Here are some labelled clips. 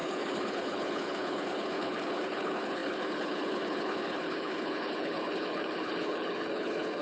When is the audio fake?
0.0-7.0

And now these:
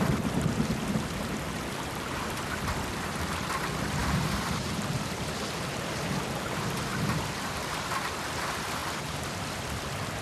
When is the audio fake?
4.0-5.3; 6.9-8.1; 8.8-10.2

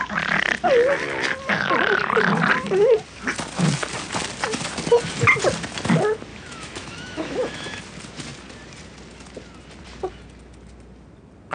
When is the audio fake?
6.3-7.8

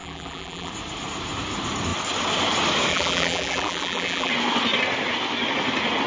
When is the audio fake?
0.0-0.7; 2.9-4.3